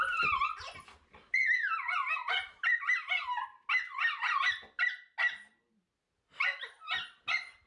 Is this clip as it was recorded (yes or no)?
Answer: yes